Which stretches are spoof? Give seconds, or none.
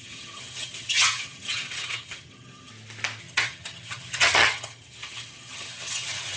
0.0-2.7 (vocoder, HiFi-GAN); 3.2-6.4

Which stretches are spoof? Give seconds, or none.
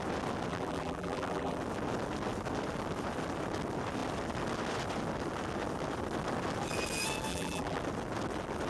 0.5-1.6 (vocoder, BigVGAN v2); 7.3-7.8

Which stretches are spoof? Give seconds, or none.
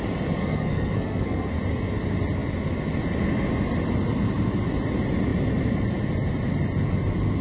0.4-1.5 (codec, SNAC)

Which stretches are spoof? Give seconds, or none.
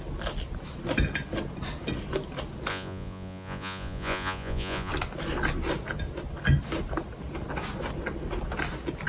2.7-4.9 (vocoder, Vocos)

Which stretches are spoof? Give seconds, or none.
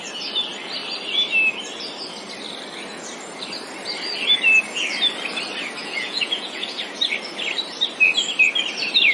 5.8-6.8 (vocoder, Vocos)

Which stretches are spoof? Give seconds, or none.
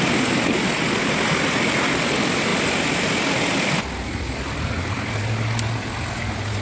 none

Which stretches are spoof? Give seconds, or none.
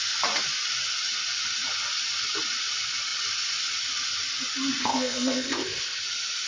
4.8-6.0 (codec, ZipCodec)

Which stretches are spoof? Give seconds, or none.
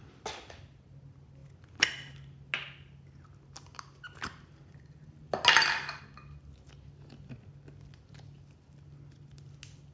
none